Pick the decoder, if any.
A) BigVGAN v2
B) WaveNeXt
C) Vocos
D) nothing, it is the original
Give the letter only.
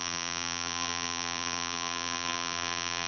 A